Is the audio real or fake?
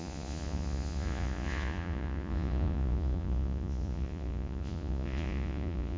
fake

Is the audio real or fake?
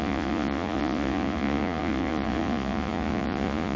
fake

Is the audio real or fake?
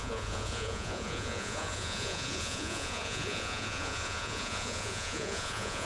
fake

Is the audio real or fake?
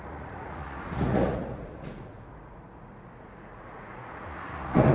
fake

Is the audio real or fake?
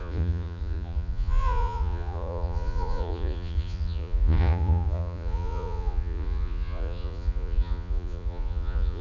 fake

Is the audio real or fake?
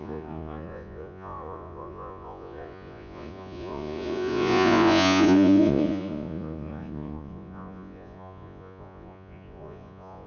fake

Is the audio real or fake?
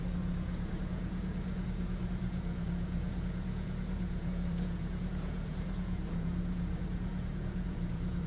fake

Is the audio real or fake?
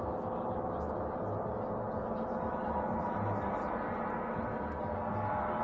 real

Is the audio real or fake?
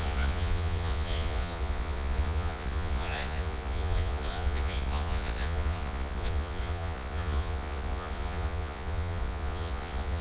fake